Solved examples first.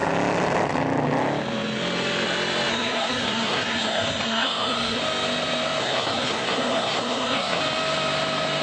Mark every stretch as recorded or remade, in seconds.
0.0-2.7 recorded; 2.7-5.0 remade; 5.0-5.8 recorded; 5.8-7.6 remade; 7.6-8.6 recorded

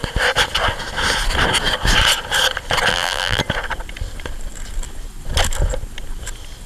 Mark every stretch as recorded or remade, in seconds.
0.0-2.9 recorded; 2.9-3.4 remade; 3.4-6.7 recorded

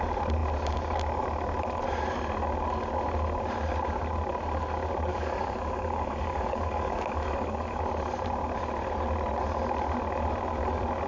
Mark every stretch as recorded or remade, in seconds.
0.0-5.1 recorded; 5.1-7.8 remade; 7.8-11.1 recorded

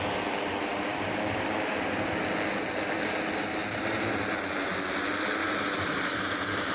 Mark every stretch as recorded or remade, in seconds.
0.0-0.9 recorded; 0.9-1.7 remade; 1.7-3.6 recorded; 3.6-4.3 remade; 4.3-5.4 recorded; 5.4-6.7 remade

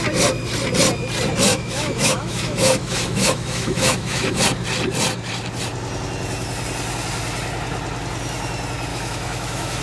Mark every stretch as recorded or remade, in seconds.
0.0-1.5 recorded; 1.5-4.4 remade; 4.4-8.9 recorded; 8.9-9.8 remade